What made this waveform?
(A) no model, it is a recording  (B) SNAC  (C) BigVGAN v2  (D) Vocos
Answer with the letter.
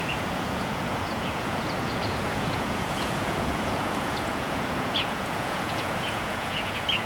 D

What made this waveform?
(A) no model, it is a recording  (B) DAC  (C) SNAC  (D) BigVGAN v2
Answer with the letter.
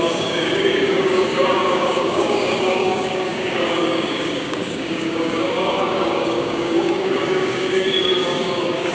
B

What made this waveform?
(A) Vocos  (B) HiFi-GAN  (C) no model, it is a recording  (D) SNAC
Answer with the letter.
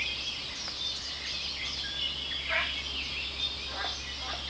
C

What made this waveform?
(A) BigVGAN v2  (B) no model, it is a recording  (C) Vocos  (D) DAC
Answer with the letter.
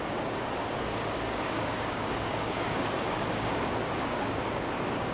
D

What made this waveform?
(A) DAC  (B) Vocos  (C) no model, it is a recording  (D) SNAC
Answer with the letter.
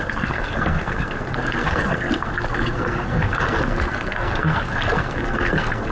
D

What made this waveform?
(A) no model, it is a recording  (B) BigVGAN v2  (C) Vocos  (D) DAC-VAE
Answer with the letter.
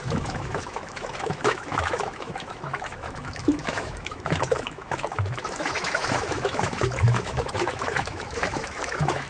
D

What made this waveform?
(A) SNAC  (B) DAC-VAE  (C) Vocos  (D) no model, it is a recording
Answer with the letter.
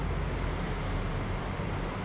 D